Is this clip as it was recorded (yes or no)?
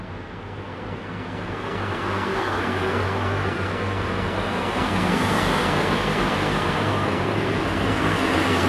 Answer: no